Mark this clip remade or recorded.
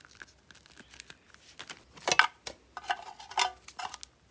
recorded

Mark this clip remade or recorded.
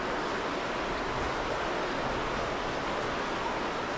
recorded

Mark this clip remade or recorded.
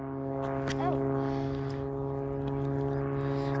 recorded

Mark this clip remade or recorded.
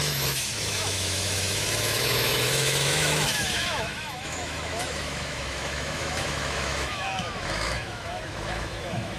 remade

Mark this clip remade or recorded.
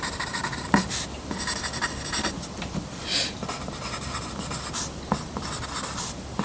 recorded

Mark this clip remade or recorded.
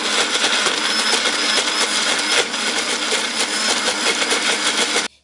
recorded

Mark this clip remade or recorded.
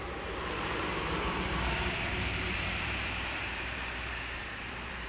remade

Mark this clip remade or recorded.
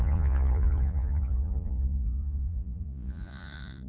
remade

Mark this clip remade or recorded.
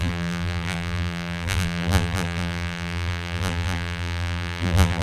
remade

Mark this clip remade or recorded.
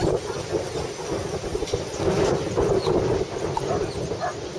recorded